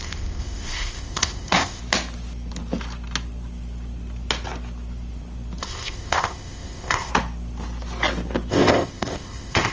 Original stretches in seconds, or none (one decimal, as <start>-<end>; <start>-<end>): 1.8-5.6; 7.1-8.5